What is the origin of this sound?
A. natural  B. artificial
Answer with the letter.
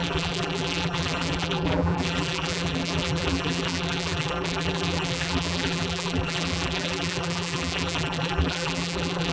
B